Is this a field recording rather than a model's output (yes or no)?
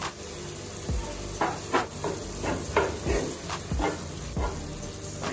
yes